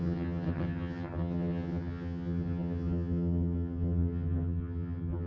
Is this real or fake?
fake